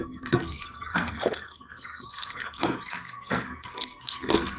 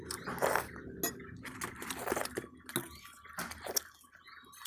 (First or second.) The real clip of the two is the second